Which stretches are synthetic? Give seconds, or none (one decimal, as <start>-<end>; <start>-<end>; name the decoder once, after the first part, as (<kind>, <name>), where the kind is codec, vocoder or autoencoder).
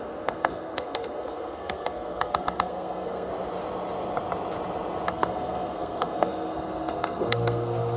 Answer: 0.0-3.3 (codec, SNAC); 5.1-8.0